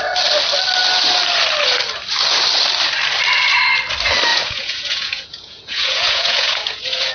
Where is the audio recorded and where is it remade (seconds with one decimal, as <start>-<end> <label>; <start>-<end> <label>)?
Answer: 0.0-4.3 recorded; 4.3-7.1 remade